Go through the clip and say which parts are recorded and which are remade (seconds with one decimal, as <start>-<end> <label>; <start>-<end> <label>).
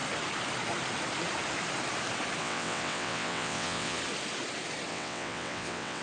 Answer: 0.0-2.4 recorded; 2.4-4.0 remade; 4.0-4.9 recorded; 4.9-6.0 remade